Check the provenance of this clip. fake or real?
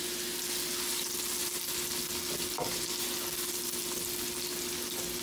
real